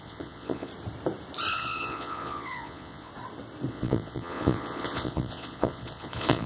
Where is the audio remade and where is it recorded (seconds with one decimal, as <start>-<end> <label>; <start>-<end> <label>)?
0.0-0.7 remade; 0.7-1.5 recorded; 1.5-3.1 remade; 3.1-3.7 recorded; 3.7-6.5 remade

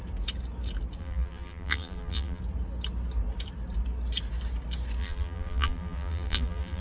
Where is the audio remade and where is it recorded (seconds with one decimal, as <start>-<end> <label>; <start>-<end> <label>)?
0.0-1.0 recorded; 1.0-2.4 remade; 2.4-5.0 recorded; 5.0-6.8 remade

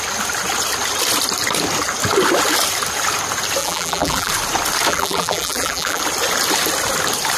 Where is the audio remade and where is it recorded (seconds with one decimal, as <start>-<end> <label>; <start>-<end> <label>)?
0.0-3.6 recorded; 3.6-4.3 remade; 4.3-4.9 recorded; 4.9-6.0 remade; 6.0-7.4 recorded

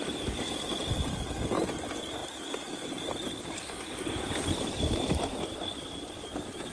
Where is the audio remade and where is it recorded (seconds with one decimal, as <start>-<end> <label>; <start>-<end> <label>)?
0.0-6.7 recorded

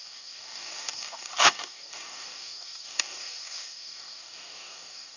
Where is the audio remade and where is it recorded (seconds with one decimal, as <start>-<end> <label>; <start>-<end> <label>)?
0.0-5.2 remade

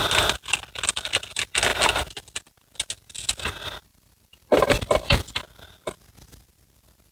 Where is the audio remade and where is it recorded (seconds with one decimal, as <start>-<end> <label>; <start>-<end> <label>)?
0.0-3.9 recorded; 3.9-5.3 remade; 5.3-7.1 recorded

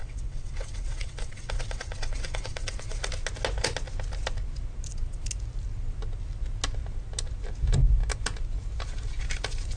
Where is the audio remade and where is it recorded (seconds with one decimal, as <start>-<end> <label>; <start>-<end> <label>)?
0.0-3.1 remade; 3.1-9.8 recorded

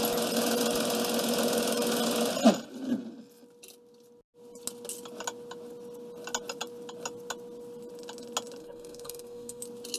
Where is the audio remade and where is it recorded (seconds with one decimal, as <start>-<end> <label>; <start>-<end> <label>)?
0.0-8.6 recorded; 8.6-9.6 remade; 9.6-10.0 recorded